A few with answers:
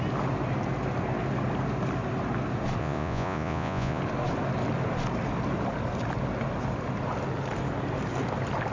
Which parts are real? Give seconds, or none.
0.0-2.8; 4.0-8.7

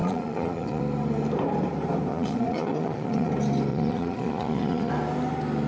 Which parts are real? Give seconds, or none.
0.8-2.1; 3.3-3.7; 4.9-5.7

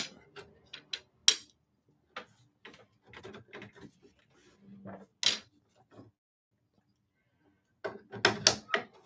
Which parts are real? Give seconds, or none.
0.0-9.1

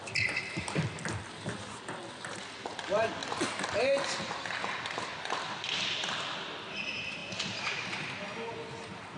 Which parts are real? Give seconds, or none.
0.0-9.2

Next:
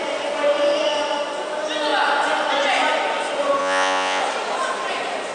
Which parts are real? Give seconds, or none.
0.0-3.6; 4.2-5.3

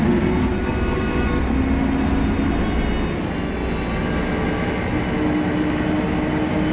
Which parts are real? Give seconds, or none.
0.0-6.7

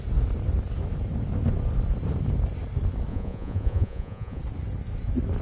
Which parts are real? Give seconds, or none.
0.0-3.1; 4.4-5.4

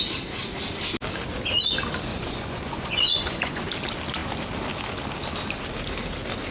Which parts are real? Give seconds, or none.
0.0-2.1; 3.6-6.5